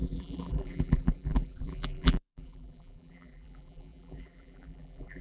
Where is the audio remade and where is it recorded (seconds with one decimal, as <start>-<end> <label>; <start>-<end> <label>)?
0.0-5.2 remade